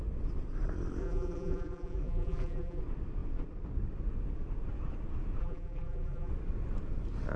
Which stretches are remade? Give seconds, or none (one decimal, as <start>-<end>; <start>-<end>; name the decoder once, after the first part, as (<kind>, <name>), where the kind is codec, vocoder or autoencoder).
1.0-2.8 (vocoder, BigVGAN v2); 5.4-6.3

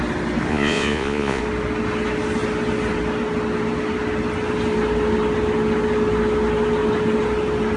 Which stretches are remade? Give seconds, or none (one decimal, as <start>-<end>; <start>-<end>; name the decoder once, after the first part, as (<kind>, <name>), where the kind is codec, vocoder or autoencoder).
0.5-1.4 (vocoder, Vocos)